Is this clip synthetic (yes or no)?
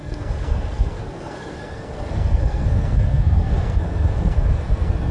yes